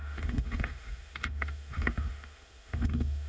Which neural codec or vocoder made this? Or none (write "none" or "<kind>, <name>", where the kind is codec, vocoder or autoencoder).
autoencoder, DAC-VAE